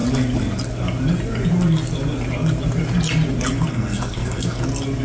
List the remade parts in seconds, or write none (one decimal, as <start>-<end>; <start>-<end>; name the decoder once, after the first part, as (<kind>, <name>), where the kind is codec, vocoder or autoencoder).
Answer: 3.7-4.6 (codec, SNAC)